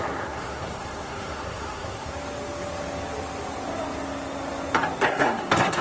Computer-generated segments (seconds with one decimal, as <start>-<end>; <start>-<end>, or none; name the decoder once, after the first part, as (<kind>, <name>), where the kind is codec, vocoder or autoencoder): 0.0-2.1 (codec, SNAC); 5.1-5.8